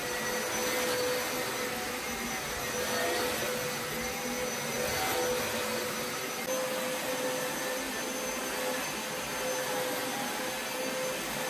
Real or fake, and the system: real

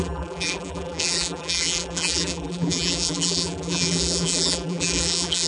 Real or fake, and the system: fake, vocoder, BigVGAN v2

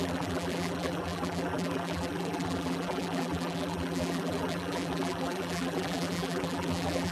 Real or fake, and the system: fake, vocoder, BigVGAN v2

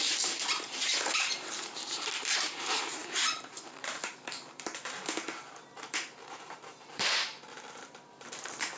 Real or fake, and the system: fake, vocoder, BigVGAN v2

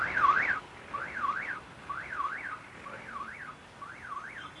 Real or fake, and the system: real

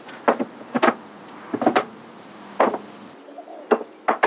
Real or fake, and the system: real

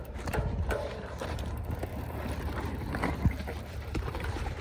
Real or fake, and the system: fake, vocoder, BigVGAN v2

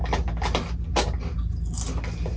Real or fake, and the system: real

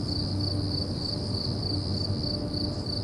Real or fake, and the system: real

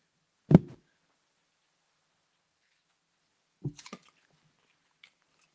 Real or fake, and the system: real